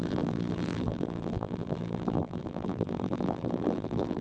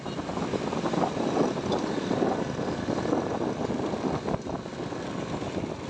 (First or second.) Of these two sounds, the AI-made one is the first